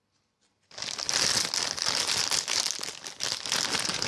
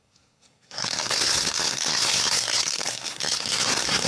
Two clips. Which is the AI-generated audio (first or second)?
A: second